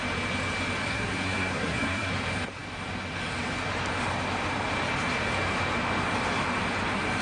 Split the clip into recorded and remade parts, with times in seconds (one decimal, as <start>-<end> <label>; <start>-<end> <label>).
0.0-0.8 recorded; 0.8-2.1 remade; 2.1-7.2 recorded